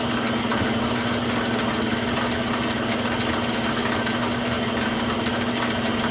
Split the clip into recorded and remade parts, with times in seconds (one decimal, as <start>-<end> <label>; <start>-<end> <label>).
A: 0.0-6.1 recorded